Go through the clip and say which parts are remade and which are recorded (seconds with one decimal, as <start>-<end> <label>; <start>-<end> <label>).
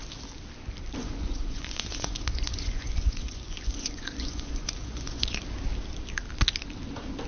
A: 0.0-1.0 recorded; 1.0-5.4 remade; 5.4-7.3 recorded